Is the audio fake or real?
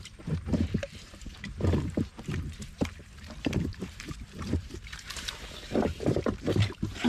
fake